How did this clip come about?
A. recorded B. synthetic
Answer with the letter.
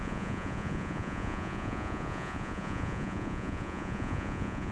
B